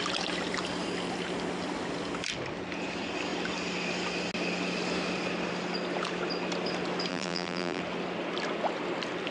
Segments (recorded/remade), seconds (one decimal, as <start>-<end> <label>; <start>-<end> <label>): 0.0-7.1 recorded; 7.1-7.8 remade; 7.8-9.3 recorded